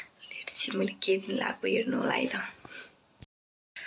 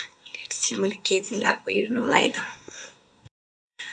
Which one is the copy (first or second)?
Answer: second